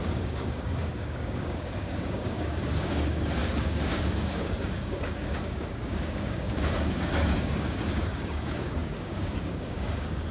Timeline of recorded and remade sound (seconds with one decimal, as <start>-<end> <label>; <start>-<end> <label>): 0.0-10.3 remade